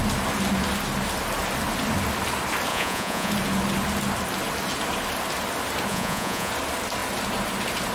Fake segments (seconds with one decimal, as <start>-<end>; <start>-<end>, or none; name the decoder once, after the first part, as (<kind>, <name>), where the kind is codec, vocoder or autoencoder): 2.7-3.3 (vocoder, Vocos); 5.9-6.5